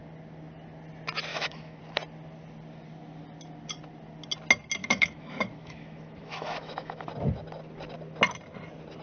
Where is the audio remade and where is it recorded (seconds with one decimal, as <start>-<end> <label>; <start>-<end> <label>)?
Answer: 0.0-1.3 recorded; 1.3-1.8 remade; 1.8-4.8 recorded; 4.8-7.0 remade; 7.0-9.0 recorded